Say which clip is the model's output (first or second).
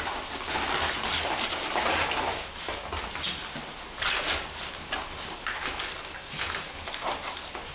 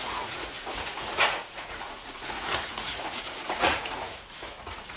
second